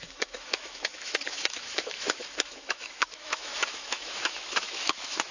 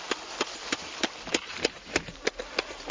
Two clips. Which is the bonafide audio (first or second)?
second